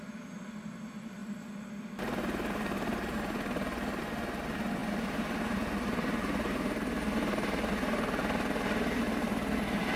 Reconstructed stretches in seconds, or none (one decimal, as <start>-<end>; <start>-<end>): none

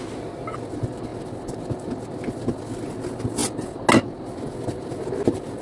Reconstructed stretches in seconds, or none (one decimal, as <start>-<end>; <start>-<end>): none

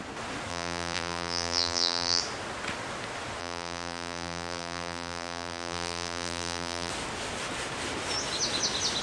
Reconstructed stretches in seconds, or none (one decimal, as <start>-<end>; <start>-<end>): 0.5-2.2; 3.4-6.9